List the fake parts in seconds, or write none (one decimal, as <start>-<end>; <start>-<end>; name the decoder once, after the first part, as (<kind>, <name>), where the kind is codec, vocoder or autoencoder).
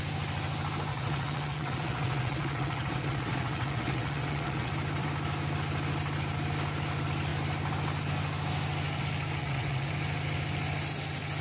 0.9-4.7 (vocoder, WaveNeXt); 9.4-9.9